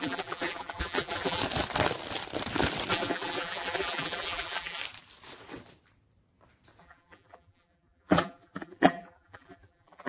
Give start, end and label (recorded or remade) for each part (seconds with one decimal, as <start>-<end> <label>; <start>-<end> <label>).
0.0-1.4 remade; 1.4-2.9 recorded; 2.9-4.8 remade; 4.8-6.8 recorded; 6.8-10.1 remade